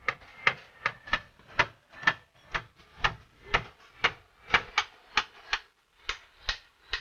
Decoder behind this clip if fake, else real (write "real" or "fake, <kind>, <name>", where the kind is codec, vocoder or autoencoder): real